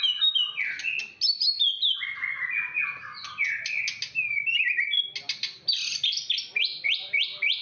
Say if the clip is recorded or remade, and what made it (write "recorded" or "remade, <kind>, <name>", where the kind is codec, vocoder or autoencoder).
recorded